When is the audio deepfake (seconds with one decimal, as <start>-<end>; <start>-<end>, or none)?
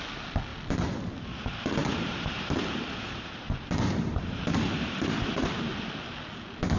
1.8-5.8